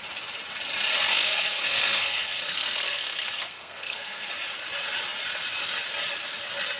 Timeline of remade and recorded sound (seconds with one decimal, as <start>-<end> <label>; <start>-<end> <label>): 0.0-1.1 recorded; 1.1-4.3 remade; 4.3-6.8 recorded